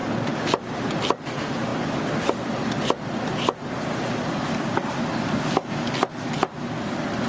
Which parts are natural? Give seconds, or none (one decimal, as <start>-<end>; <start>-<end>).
0.0-7.3